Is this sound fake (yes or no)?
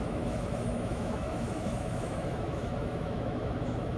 yes